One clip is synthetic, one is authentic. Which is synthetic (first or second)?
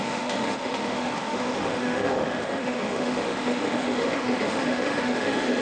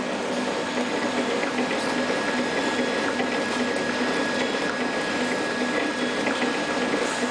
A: first